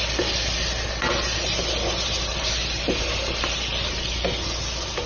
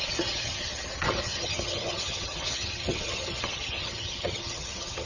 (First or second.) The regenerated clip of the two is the second